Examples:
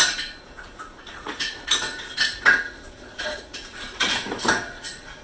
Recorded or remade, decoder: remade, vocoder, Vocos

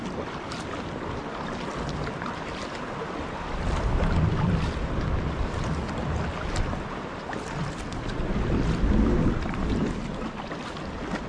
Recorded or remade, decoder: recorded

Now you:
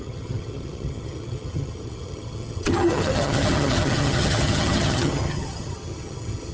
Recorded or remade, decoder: remade, vocoder, HiFi-GAN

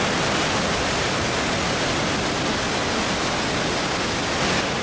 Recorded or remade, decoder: recorded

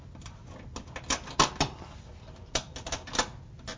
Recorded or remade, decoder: recorded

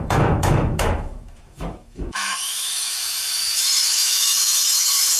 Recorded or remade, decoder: remade, autoencoder, DAC-VAE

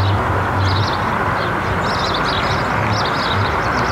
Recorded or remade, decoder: recorded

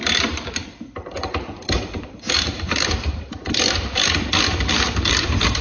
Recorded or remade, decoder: remade, vocoder, BigVGAN v2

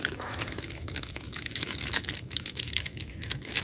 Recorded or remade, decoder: remade, autoencoder, DAC-VAE